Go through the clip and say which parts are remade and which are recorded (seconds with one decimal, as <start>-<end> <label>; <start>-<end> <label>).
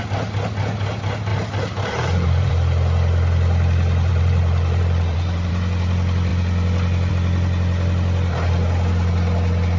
0.0-1.3 recorded; 1.3-2.5 remade; 2.5-4.1 recorded; 4.1-5.5 remade; 5.5-9.8 recorded